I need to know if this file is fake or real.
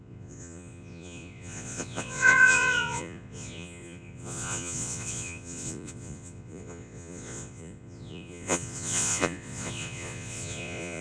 fake